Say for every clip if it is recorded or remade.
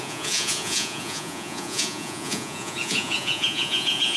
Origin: remade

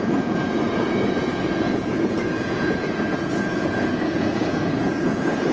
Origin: remade